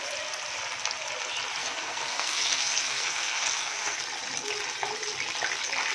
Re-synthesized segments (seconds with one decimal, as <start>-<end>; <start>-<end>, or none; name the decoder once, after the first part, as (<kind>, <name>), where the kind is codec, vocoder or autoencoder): 1.6-4.0 (codec, SNAC)